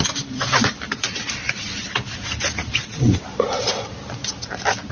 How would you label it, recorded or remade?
recorded